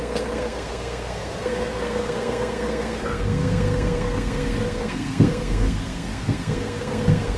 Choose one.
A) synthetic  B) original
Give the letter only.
A